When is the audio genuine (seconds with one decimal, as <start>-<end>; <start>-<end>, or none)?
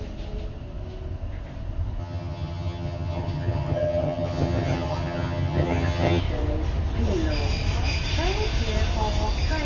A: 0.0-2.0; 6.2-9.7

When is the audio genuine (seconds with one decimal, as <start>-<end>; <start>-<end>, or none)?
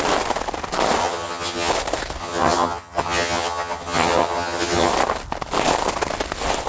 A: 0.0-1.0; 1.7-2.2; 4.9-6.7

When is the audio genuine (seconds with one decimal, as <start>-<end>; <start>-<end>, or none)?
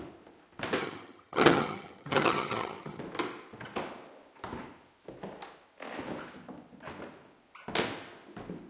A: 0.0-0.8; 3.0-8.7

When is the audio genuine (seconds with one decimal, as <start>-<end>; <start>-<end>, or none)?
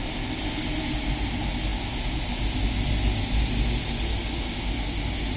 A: 0.0-5.4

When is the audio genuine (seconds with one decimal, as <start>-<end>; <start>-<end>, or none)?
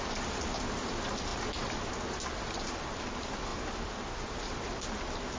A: 0.0-5.4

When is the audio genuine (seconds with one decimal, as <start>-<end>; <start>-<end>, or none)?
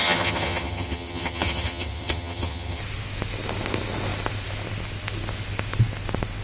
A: 2.8-6.4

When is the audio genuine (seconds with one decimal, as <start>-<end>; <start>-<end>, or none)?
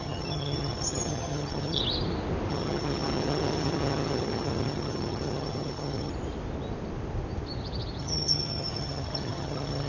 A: 1.8-2.5; 6.1-8.0